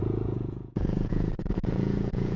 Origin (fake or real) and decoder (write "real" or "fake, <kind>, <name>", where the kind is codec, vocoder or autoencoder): fake, vocoder, Vocos